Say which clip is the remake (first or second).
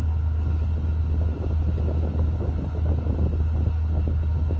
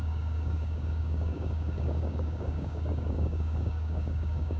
second